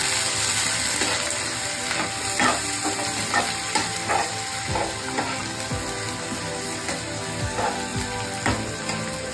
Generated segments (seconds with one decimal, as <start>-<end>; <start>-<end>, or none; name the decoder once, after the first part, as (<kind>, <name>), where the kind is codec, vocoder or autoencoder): none